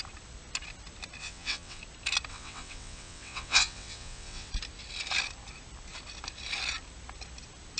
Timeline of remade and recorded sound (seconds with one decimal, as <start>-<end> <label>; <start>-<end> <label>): 0.0-1.2 recorded; 1.2-1.8 remade; 1.8-2.3 recorded; 2.3-4.5 remade; 4.5-7.8 recorded